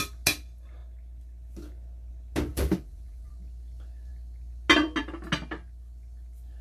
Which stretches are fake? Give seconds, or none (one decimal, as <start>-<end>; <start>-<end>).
2.5-3.3